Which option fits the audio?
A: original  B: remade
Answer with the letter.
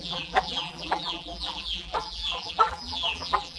B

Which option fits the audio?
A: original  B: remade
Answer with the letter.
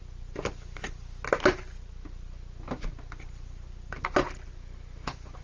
A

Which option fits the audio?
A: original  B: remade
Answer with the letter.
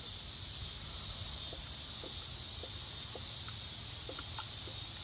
A